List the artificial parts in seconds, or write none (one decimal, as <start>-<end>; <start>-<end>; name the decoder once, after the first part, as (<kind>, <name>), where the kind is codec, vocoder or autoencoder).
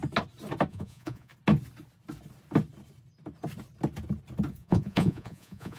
0.7-1.3 (vocoder, Vocos); 4.5-5.8